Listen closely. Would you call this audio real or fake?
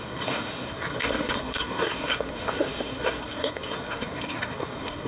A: fake